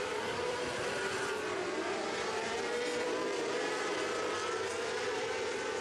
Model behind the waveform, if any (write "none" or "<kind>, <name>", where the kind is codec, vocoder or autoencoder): vocoder, BigVGAN v2